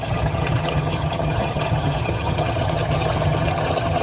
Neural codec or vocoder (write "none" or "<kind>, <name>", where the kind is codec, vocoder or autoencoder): vocoder, HiFi-GAN